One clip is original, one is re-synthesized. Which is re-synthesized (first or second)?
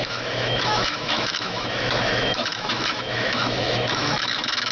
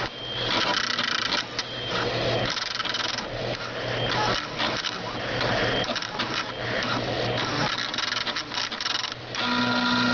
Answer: first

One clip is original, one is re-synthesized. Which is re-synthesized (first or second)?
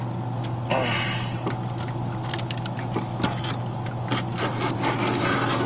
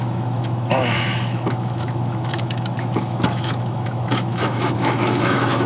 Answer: second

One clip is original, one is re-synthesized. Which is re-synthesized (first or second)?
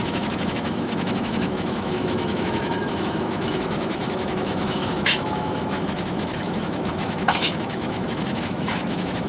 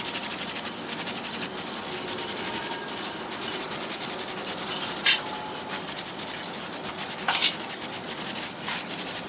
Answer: first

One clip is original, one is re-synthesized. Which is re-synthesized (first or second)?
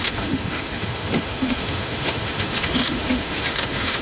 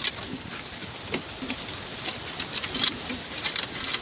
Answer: first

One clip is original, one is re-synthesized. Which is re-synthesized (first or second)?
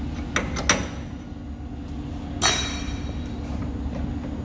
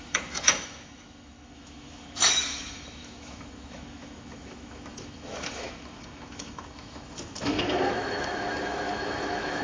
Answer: second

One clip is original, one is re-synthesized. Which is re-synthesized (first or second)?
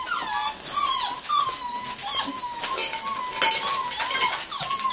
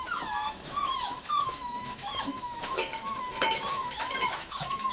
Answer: second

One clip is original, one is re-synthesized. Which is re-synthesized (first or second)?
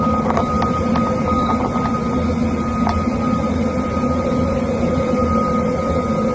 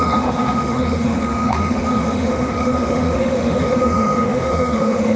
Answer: second